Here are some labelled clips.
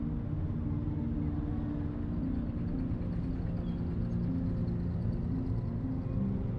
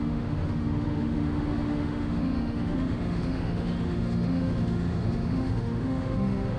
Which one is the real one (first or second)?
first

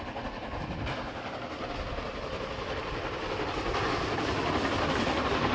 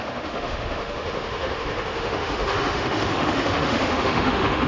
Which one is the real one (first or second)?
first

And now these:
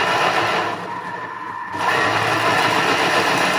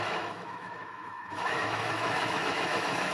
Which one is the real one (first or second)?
first